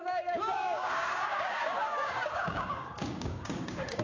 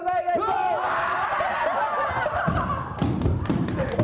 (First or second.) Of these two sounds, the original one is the second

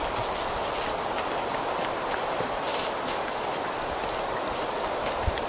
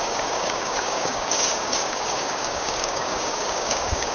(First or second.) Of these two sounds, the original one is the first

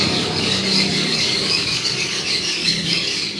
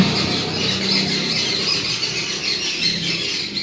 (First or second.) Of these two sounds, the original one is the second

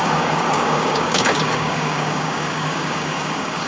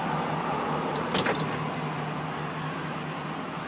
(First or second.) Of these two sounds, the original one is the second